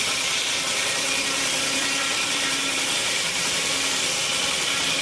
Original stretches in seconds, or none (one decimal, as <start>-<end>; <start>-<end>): none